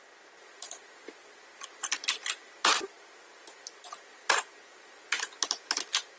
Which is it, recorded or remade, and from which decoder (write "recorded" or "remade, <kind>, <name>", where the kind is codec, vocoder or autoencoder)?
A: recorded